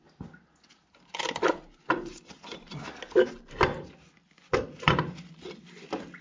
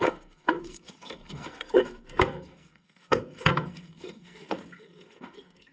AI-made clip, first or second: second